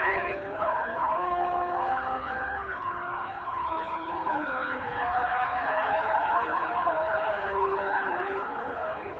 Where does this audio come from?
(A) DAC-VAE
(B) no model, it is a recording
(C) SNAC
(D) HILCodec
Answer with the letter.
D